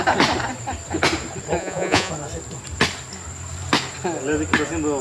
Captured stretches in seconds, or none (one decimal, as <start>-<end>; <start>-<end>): 0.0-1.6; 2.1-5.0